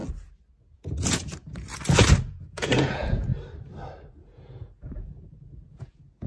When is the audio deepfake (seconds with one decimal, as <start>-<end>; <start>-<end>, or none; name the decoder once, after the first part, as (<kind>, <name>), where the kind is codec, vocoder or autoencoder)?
0.6-1.7 (vocoder, Vocos); 2.3-3.3; 4.1-6.3

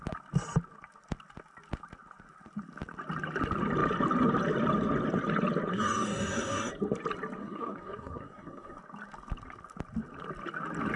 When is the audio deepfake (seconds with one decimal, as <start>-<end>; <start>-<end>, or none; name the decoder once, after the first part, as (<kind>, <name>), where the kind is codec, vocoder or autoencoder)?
5.7-6.7 (codec, SNAC); 7.4-8.8

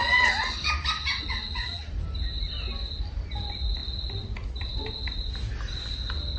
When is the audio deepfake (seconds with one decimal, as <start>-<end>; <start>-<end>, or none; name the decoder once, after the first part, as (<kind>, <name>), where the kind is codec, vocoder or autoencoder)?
0.0-0.5 (vocoder, Vocos); 1.1-1.9

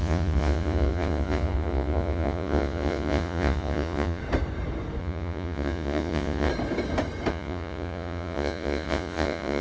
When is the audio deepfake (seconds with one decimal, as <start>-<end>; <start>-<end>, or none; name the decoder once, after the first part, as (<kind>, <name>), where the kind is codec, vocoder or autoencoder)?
0.0-4.2 (vocoder, Vocos); 5.0-6.5; 7.3-9.6

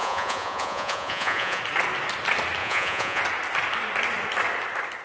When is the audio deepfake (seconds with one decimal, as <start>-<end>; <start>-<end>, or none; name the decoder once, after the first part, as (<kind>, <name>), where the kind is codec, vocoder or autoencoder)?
0.0-1.6 (vocoder, Vocos); 2.6-3.2

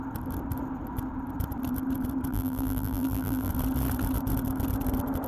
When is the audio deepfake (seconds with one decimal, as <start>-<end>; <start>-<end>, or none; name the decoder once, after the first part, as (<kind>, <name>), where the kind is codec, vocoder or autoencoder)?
2.3-3.5 (vocoder, BigVGAN v2)

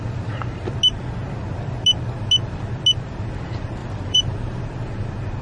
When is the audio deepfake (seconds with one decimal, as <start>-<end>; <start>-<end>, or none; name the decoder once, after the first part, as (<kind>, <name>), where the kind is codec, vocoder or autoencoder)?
3.8-4.6 (vocoder, BigVGAN v2)